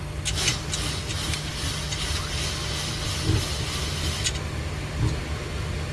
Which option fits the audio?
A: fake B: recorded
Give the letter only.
B